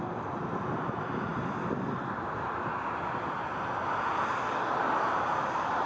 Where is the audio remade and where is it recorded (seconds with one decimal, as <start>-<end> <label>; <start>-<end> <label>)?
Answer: 0.0-5.9 recorded